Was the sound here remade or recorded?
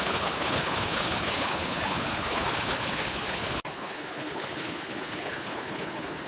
remade